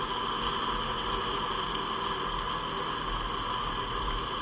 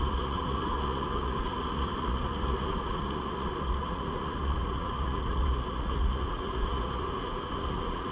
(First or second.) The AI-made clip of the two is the second